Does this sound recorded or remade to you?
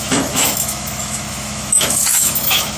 remade